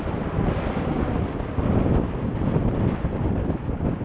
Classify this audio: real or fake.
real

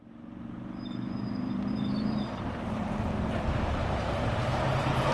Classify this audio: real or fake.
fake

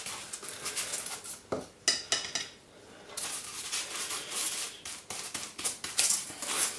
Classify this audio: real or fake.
real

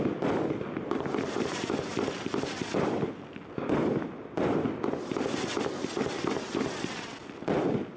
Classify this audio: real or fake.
real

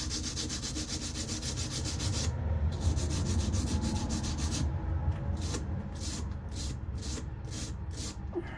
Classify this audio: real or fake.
real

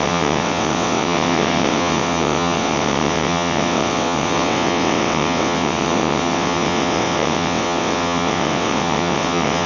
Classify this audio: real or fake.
fake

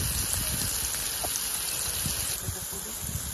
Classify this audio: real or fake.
real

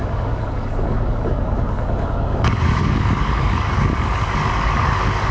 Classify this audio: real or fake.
fake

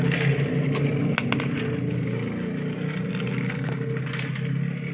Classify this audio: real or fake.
real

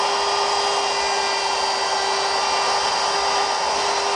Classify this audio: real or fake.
real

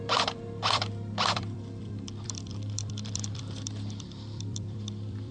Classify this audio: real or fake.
fake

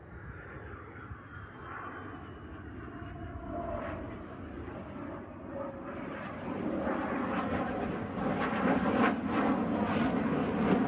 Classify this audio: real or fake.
real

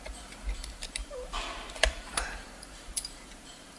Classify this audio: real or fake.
fake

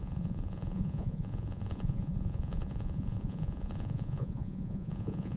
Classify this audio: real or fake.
fake